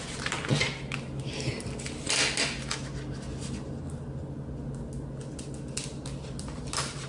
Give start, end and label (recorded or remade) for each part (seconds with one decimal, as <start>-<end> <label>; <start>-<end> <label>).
0.0-7.1 recorded